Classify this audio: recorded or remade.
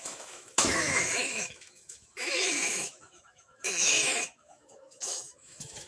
remade